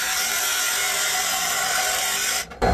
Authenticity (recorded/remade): remade